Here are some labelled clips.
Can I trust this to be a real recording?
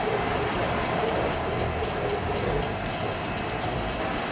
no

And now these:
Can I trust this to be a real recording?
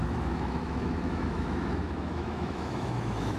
no